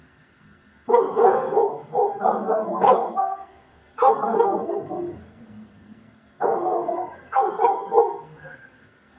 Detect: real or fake fake